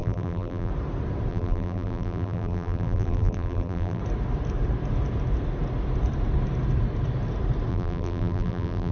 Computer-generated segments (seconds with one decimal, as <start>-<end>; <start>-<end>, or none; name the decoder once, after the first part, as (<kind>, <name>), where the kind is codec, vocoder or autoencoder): 0.0-0.7 (vocoder, BigVGAN v2); 1.3-4.0; 7.7-8.9